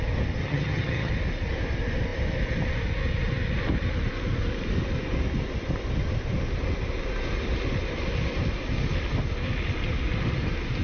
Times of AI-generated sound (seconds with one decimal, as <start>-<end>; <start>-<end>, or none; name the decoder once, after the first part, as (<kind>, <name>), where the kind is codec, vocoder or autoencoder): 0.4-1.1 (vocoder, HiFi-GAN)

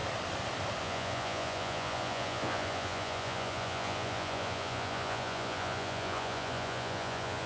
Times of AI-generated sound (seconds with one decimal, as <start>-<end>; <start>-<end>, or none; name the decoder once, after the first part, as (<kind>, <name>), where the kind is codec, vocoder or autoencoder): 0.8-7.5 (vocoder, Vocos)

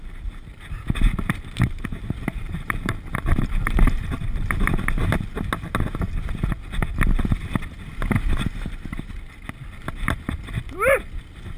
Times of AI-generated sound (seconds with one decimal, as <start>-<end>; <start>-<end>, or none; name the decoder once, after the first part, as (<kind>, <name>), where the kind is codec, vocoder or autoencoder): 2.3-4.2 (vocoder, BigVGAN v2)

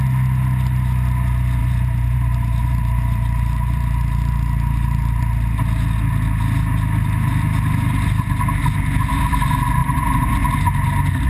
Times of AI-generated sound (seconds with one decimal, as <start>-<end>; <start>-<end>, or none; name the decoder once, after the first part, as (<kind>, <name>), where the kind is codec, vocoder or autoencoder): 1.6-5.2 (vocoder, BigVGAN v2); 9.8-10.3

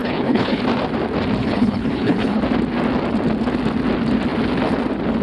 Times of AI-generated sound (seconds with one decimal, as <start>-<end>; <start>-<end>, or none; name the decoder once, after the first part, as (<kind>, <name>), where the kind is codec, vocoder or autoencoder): 0.0-0.6 (codec, HILCodec); 1.4-2.4

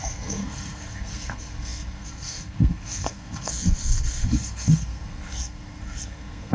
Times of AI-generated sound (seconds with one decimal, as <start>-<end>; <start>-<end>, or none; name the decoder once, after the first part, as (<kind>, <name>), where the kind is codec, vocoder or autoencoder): 0.0-6.5 (codec, SNAC)

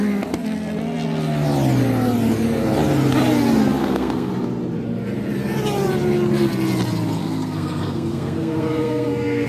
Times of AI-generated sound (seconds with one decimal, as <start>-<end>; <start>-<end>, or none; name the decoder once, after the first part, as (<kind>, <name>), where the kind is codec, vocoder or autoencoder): 3.8-4.3 (codec, SNAC); 7.2-9.5